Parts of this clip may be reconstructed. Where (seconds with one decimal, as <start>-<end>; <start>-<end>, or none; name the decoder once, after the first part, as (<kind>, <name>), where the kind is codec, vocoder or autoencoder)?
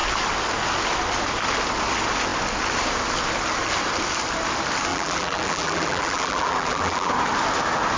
4.9-7.1 (vocoder, BigVGAN v2)